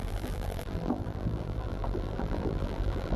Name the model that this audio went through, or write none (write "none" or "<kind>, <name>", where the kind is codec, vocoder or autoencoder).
vocoder, BigVGAN v2